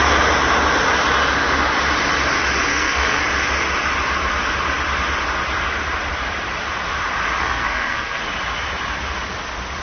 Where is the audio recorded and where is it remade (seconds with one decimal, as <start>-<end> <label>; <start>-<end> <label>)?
0.0-2.7 recorded; 2.7-3.2 remade; 3.2-7.4 recorded; 7.4-8.2 remade; 8.2-9.8 recorded

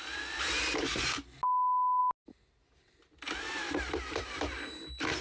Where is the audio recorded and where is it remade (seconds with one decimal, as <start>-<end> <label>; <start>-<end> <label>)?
0.0-5.2 recorded

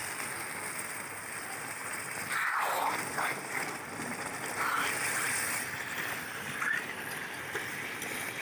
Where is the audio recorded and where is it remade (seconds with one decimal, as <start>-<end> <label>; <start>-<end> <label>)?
0.0-8.4 recorded

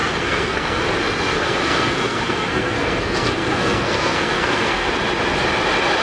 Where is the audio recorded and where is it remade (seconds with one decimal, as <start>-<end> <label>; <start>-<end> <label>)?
0.0-0.8 remade; 0.8-1.3 recorded; 1.3-4.9 remade; 4.9-6.0 recorded

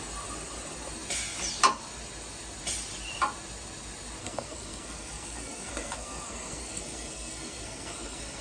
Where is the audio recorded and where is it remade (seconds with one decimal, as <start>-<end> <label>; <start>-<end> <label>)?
0.0-4.2 recorded; 4.2-8.4 remade